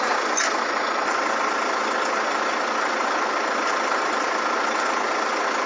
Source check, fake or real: real